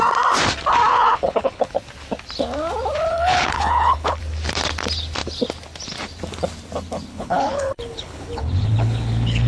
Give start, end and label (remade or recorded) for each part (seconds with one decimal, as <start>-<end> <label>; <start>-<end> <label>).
0.0-0.9 recorded; 0.9-1.6 remade; 1.6-3.1 recorded; 3.1-4.2 remade; 4.2-7.1 recorded; 7.1-9.5 remade